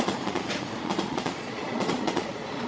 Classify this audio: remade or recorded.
remade